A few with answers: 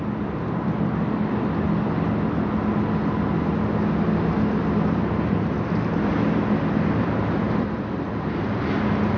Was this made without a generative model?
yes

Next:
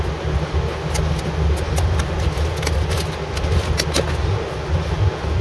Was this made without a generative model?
yes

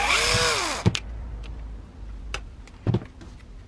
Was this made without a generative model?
yes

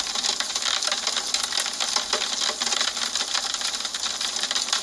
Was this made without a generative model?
yes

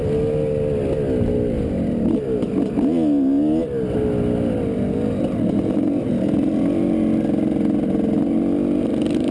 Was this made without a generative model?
yes